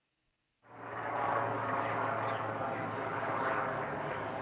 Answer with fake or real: fake